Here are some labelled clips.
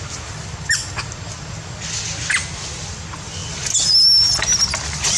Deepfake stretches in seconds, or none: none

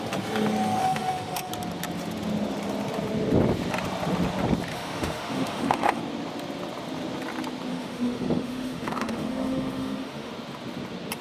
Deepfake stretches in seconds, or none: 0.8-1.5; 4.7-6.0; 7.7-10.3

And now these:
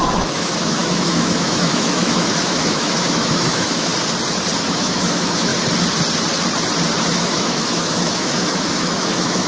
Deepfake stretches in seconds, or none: 0.0-3.9; 4.7-5.5; 7.1-9.5

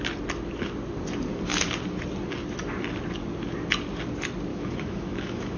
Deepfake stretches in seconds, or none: 4.5-5.6

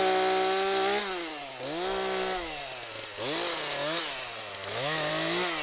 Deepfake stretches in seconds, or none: 4.6-5.1

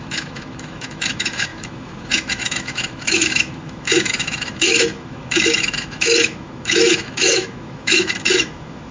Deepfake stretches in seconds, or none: 0.0-8.9

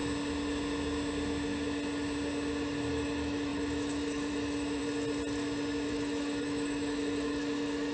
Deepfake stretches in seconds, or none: 2.9-4.8; 5.9-7.9

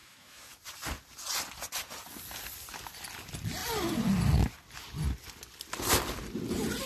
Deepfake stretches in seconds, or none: 0.0-0.6